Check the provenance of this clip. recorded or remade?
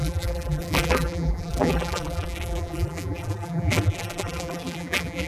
remade